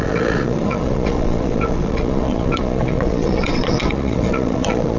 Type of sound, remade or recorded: remade